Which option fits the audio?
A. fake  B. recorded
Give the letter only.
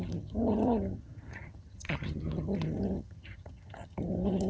A